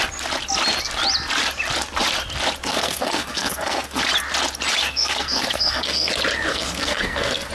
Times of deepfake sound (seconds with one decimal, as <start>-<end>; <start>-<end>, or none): 2.7-4.0; 4.8-6.1; 6.5-7.5